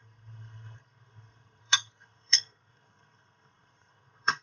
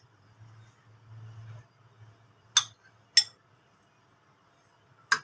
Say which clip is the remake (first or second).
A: first